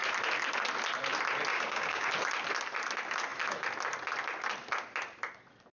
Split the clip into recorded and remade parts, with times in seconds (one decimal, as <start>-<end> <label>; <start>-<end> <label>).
0.0-1.5 recorded; 1.5-2.1 remade; 2.1-5.7 recorded